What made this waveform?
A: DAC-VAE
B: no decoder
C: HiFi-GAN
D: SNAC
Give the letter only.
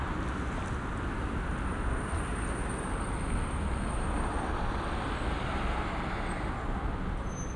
B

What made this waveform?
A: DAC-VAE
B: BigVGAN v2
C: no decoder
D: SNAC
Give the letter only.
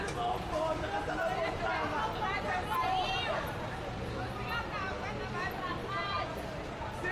C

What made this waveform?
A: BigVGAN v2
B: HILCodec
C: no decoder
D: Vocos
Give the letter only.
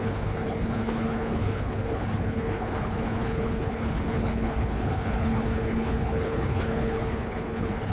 B